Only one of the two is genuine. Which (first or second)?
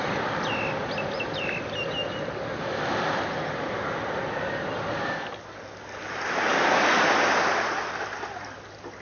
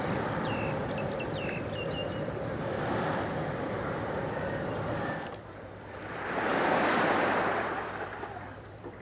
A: first